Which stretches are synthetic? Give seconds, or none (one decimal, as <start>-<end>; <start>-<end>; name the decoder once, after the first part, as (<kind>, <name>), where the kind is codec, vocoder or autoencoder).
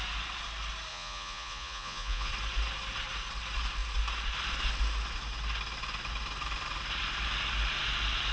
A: 0.9-2.3 (vocoder, Vocos)